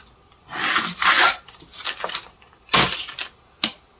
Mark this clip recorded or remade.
recorded